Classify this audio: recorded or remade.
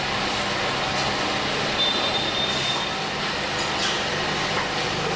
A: recorded